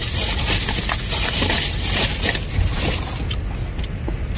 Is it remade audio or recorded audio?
recorded